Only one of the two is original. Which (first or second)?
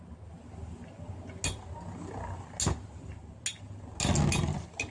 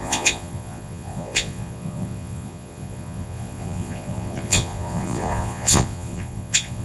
first